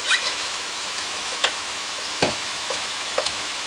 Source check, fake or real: fake